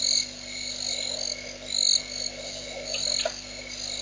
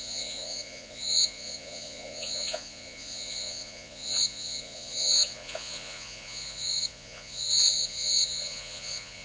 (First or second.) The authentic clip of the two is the first